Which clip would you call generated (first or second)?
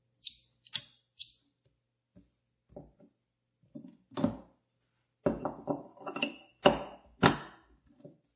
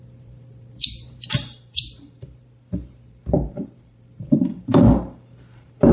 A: second